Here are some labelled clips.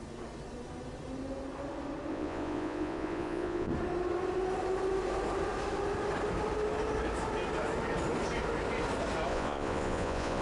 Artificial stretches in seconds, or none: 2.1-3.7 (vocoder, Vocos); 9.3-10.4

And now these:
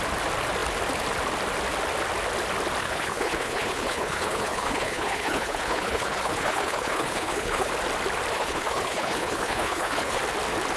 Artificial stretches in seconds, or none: 2.8-7.7 (codec, HILCodec); 8.3-10.2

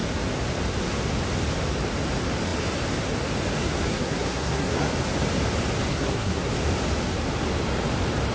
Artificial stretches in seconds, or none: 3.6-4.9 (codec, SNAC); 5.9-6.5

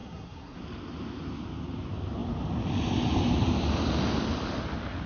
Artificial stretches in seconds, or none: 0.0-0.6 (codec, SNAC)